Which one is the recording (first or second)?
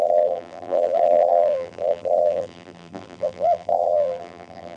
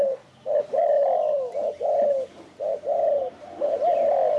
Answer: second